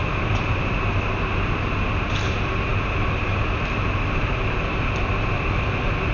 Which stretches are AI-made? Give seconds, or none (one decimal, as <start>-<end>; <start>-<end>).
none